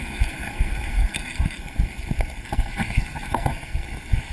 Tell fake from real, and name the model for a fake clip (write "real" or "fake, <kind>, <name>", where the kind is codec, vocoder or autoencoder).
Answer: fake, codec, SNAC